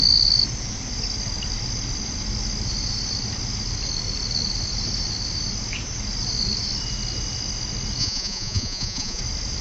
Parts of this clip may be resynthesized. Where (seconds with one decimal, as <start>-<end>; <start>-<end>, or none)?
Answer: 8.0-9.2